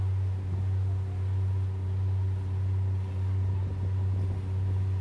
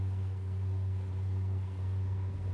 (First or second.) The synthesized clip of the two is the second